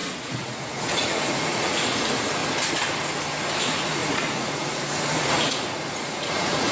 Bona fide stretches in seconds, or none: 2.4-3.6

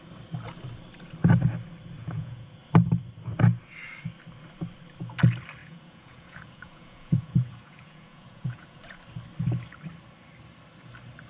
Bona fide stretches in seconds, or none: 0.0-2.0; 2.6-5.6; 9.0-11.3

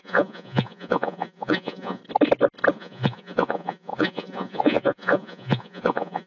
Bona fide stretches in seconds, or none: 2.0-2.7

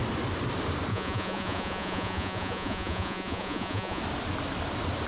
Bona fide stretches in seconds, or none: 0.0-0.9; 4.0-5.1

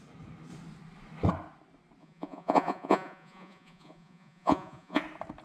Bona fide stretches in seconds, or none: 0.0-2.0; 5.0-5.4

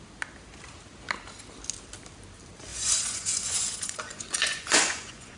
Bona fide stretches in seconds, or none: 0.0-2.7

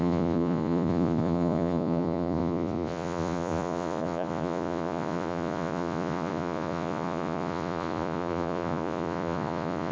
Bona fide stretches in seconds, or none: none